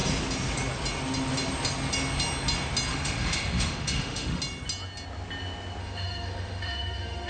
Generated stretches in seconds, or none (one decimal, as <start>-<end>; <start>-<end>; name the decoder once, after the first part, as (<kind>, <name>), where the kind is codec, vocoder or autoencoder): 2.9-4.4 (autoencoder, DAC-VAE); 5.8-7.3